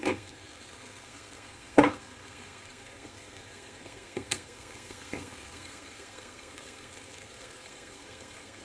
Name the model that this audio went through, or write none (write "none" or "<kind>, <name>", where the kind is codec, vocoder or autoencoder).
codec, SNAC